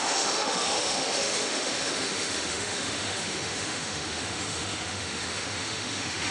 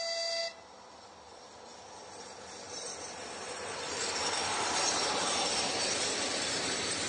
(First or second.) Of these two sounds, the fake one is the first